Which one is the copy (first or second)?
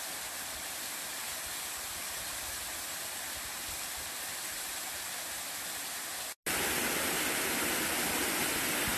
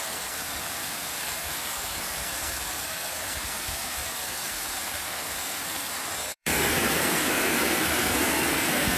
second